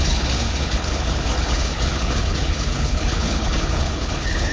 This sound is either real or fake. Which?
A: fake